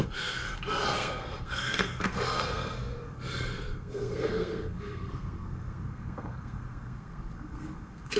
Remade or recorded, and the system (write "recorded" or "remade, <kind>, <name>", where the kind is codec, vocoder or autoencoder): remade, codec, SNAC